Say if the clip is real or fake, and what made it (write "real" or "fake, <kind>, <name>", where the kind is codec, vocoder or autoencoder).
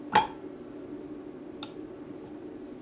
real